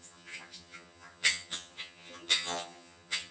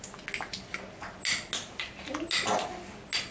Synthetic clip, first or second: first